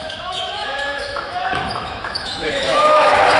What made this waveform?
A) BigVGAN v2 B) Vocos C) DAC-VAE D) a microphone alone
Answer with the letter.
C